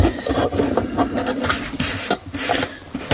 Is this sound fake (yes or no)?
yes